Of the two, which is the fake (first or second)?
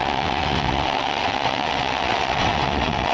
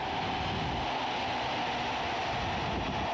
first